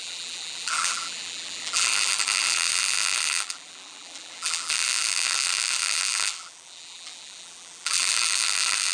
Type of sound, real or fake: fake